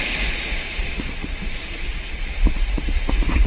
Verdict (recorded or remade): remade